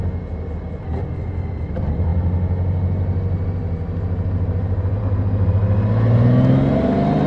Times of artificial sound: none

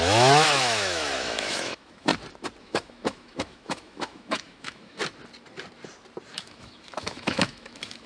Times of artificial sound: 0.0-2.1 (autoencoder, DAC-VAE); 2.6-5.0; 6.3-8.1

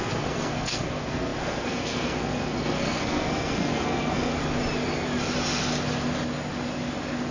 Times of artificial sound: 0.0-4.3 (codec, SNAC)